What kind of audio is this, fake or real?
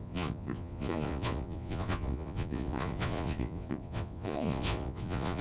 fake